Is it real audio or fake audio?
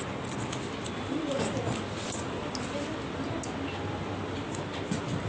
real